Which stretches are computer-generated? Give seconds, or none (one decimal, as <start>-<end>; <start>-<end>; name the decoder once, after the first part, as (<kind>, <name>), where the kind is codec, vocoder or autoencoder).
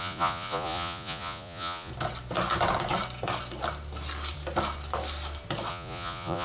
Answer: 0.0-1.9 (vocoder, Vocos); 5.7-6.4